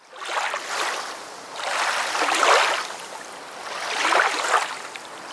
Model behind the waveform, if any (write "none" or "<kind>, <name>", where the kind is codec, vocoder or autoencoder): none